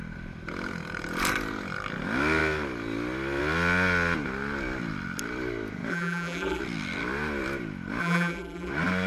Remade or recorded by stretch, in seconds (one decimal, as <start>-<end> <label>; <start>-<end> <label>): 0.0-5.9 recorded; 5.9-6.6 remade; 6.6-8.0 recorded; 8.0-8.7 remade; 8.7-9.1 recorded